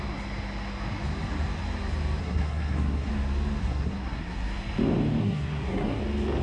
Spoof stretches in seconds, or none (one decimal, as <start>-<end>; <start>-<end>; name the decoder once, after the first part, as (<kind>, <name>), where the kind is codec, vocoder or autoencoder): 2.2-3.1 (codec, SNAC); 3.6-4.5; 5.2-6.0

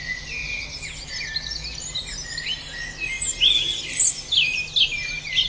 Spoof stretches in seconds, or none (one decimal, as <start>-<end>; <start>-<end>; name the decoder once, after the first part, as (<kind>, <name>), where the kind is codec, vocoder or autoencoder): none